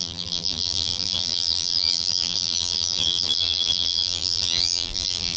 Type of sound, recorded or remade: remade